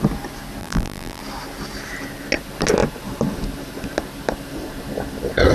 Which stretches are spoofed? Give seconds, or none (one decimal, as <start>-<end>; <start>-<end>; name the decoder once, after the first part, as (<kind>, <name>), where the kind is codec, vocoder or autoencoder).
0.6-1.2 (vocoder, BigVGAN v2)